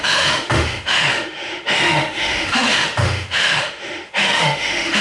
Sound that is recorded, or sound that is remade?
remade